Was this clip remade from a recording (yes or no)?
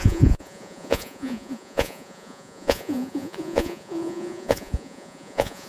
yes